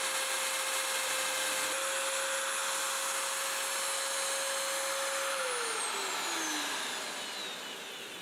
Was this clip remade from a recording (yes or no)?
no